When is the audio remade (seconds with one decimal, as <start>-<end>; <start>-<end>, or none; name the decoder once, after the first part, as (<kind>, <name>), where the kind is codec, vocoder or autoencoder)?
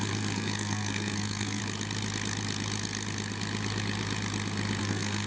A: 0.0-1.6 (codec, SNAC); 4.8-5.3